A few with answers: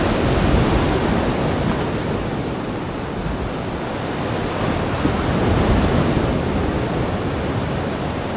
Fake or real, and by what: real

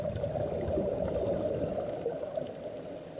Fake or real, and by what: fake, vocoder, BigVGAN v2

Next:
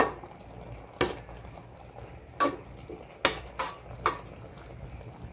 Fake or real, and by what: real